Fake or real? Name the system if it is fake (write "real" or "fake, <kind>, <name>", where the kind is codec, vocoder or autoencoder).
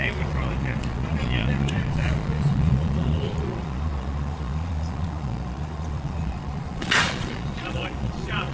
fake, vocoder, Vocos